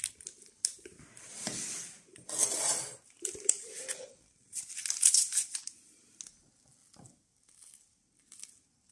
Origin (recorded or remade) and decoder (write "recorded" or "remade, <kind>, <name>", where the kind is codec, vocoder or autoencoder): recorded